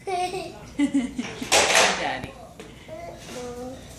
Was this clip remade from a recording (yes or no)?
no